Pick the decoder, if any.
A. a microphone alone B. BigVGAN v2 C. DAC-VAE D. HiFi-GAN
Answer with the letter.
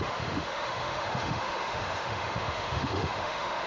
C